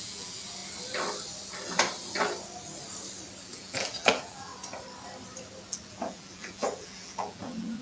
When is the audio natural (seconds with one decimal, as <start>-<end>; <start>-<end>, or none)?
0.6-3.4; 4.5-5.9